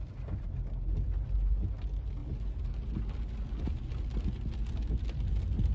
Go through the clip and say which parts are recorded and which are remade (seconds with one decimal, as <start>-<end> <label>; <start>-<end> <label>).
0.0-5.7 recorded